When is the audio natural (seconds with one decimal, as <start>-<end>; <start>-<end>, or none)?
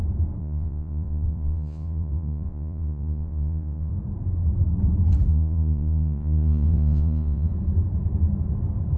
0.0-0.4; 3.9-5.3; 7.5-9.0